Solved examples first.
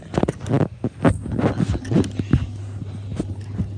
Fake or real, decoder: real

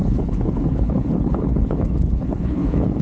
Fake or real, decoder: fake, codec, HILCodec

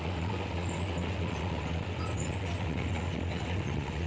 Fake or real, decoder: fake, vocoder, WaveNeXt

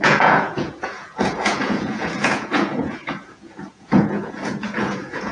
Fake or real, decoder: fake, vocoder, Vocos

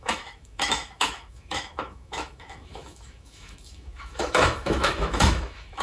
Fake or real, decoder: fake, autoencoder, DAC-VAE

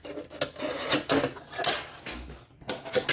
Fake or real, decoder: real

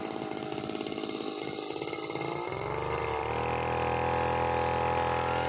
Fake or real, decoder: real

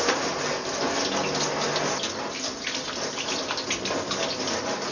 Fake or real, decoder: real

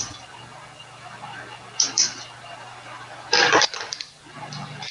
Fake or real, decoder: fake, vocoder, BigVGAN v2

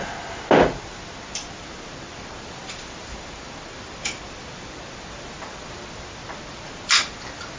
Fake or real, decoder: real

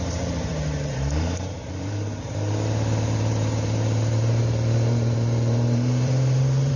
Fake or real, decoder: fake, vocoder, BigVGAN v2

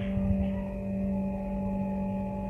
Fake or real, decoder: real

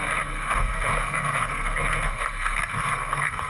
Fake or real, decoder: fake, codec, SNAC